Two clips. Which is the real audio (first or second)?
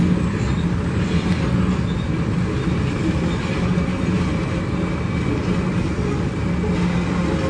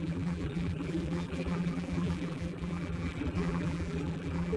first